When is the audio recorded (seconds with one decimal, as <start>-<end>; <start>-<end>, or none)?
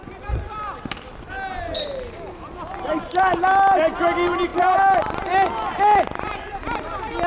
0.0-7.3